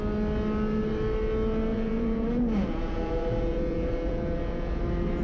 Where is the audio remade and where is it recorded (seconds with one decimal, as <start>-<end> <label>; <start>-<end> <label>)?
0.0-1.7 recorded; 1.7-4.8 remade; 4.8-5.2 recorded